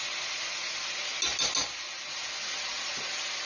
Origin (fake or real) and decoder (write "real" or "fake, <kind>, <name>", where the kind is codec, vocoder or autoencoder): real